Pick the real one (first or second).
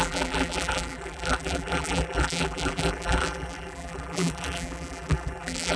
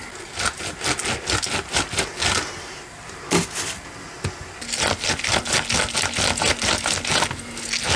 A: second